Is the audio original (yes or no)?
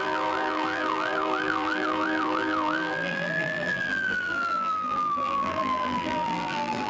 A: no